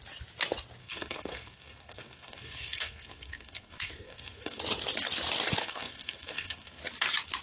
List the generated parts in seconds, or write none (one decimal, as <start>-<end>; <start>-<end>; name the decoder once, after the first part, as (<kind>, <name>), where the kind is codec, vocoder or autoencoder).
0.8-4.6 (codec, SNAC); 5.6-6.8